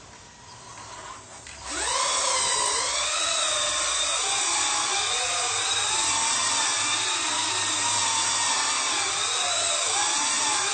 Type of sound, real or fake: real